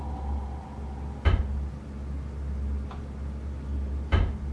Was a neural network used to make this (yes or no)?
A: no